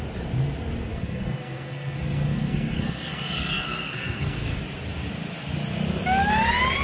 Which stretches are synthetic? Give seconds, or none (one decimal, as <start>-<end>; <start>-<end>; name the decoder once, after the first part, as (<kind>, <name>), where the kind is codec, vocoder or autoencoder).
0.9-4.6 (codec, SNAC)